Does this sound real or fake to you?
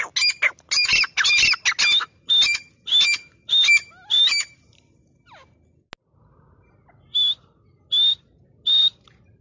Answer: real